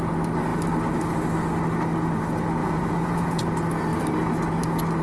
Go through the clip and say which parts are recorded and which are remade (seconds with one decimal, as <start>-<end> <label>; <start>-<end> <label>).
0.0-2.6 recorded; 2.6-3.4 remade; 3.4-5.0 recorded

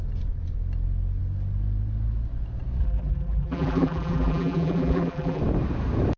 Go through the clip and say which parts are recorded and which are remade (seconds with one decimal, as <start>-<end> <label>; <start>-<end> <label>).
0.0-2.8 recorded; 2.8-5.4 remade; 5.4-6.2 recorded

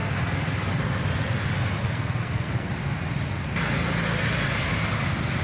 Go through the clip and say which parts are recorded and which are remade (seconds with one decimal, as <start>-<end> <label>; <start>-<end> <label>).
0.0-1.8 recorded; 1.8-2.7 remade; 2.7-5.4 recorded

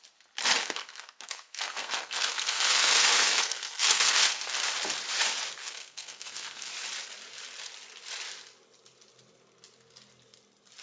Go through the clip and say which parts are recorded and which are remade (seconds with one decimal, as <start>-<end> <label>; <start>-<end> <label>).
0.0-0.6 recorded; 0.6-4.6 remade; 4.6-5.6 recorded; 5.6-6.7 remade; 6.7-10.8 recorded

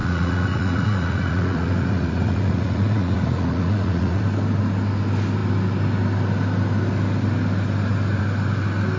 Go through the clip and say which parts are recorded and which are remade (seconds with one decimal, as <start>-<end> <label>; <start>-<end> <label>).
0.0-4.2 remade; 4.2-9.0 recorded

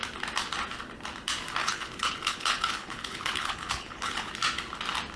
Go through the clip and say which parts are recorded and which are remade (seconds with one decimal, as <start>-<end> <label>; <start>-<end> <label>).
0.0-1.6 recorded; 1.6-4.3 remade; 4.3-5.2 recorded